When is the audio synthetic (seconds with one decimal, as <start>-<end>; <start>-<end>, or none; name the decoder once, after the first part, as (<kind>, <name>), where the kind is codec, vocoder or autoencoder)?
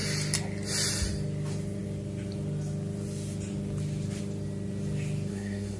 5.3-5.8 (codec, SNAC)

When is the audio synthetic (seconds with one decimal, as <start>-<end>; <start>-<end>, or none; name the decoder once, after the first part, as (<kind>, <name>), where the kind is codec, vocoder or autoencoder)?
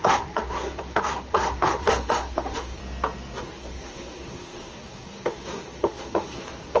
0.0-2.8 (codec, SNAC); 3.4-6.8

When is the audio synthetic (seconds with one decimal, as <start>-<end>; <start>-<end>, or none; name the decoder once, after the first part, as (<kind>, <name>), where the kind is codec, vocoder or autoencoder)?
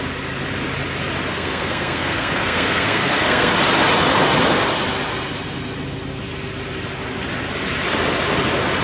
1.3-3.5 (codec, SNAC)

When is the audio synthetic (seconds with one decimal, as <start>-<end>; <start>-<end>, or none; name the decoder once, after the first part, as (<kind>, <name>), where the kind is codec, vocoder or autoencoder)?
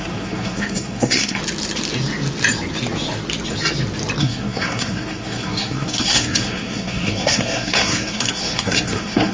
0.0-1.4 (codec, SNAC); 4.2-9.3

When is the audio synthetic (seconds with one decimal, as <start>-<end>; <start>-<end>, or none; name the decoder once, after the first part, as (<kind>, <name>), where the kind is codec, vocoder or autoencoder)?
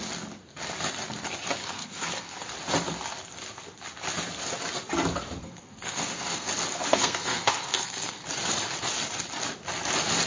1.6-2.5 (codec, SNAC); 5.4-6.5; 6.9-8.2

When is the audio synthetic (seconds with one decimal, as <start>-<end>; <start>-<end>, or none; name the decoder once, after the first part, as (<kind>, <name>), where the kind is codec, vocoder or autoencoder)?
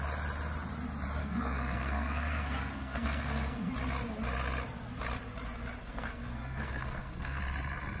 1.2-3.7 (codec, SNAC); 5.8-7.4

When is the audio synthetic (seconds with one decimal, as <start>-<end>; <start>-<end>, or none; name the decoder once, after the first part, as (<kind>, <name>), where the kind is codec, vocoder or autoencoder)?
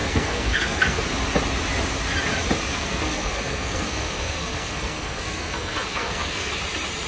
0.0-1.0 (codec, SNAC); 2.7-6.5